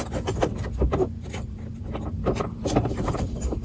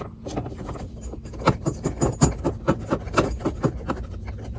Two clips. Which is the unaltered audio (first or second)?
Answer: second